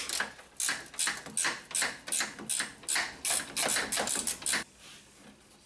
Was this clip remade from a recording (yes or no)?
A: no